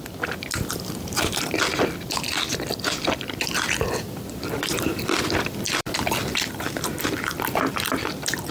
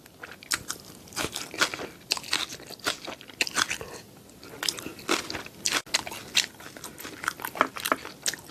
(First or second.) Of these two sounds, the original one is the second